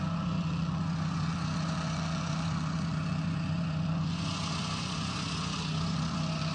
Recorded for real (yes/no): no